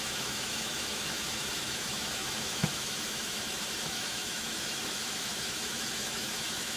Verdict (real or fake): fake